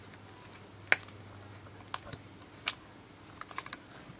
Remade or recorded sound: recorded